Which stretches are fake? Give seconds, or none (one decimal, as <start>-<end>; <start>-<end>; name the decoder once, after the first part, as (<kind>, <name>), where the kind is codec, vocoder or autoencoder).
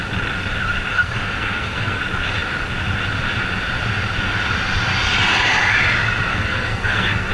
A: 0.9-2.0 (codec, SNAC); 6.3-7.3